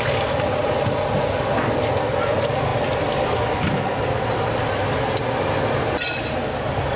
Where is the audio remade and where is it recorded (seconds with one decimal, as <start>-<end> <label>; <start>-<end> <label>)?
0.0-7.0 recorded